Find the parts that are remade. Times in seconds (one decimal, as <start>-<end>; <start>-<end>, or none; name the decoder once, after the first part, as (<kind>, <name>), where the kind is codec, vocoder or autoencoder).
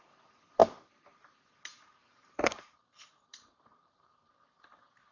1.7-4.3 (vocoder, BigVGAN v2)